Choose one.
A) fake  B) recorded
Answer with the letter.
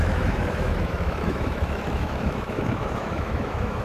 A